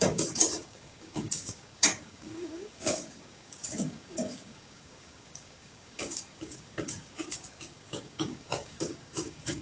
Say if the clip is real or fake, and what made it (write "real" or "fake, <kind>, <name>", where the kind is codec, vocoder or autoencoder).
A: fake, codec, DAC